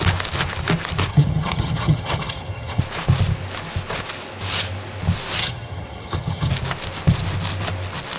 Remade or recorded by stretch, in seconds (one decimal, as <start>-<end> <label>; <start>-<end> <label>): 0.0-1.1 recorded; 1.1-2.8 remade; 2.8-5.4 recorded; 5.4-6.5 remade; 6.5-8.2 recorded